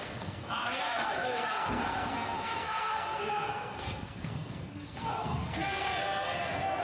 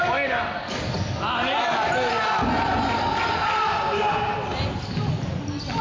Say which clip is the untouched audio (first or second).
second